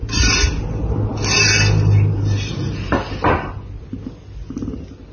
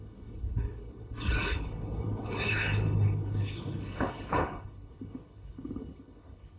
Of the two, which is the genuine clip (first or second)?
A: first